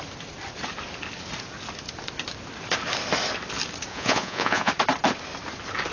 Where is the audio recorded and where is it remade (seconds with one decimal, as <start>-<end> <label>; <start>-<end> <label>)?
0.0-3.9 recorded; 3.9-4.7 remade; 4.7-5.9 recorded